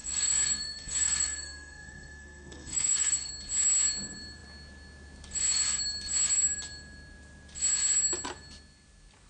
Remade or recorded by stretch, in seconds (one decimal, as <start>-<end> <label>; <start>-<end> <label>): 0.0-3.3 remade; 3.3-9.3 recorded